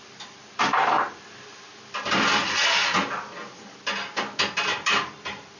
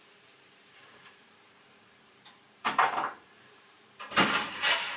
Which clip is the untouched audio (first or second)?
first